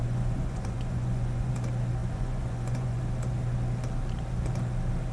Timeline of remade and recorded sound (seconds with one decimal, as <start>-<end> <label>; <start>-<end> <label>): 0.0-1.5 remade; 1.5-2.0 recorded; 2.0-3.0 remade; 3.0-5.1 recorded